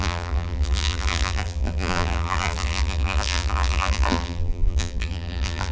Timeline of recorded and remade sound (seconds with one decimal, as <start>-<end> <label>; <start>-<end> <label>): 0.0-5.7 remade